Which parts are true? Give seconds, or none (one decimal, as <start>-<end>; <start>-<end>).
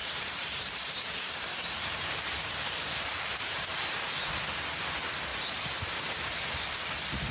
4.3-5.3; 5.9-7.3